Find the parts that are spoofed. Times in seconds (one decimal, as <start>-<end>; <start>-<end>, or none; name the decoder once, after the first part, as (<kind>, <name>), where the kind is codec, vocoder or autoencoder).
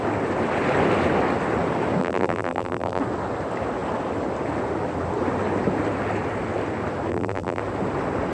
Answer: 2.0-3.0 (vocoder, BigVGAN v2); 7.1-7.6